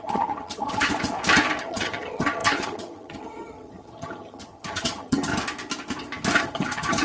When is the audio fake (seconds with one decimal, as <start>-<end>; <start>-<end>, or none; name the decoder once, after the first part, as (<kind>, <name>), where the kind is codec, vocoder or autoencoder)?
0.0-0.9 (vocoder, HiFi-GAN); 1.6-5.3; 6.4-7.0